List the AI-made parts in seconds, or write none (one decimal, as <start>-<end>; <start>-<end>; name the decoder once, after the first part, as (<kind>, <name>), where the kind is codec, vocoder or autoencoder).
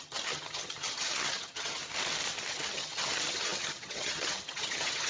0.0-1.8 (vocoder, HiFi-GAN); 2.5-5.1